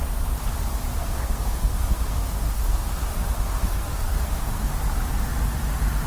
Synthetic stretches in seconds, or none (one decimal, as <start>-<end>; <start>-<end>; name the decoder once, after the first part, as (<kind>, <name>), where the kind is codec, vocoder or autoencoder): 1.0-4.7 (codec, SNAC)